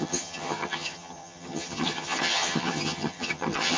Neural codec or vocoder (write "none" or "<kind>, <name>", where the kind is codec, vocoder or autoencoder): vocoder, HiFi-GAN